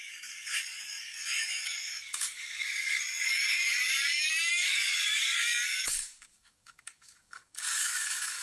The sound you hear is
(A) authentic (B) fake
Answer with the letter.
B